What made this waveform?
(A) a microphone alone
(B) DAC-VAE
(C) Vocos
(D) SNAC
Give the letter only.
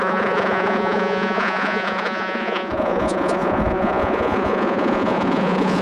C